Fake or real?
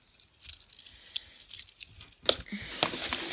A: real